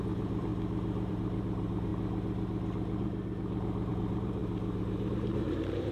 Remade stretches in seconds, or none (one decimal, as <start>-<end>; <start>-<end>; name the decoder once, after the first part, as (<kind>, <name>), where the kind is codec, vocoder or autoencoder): 0.0-0.5 (vocoder, BigVGAN v2); 1.1-1.9; 3.9-5.9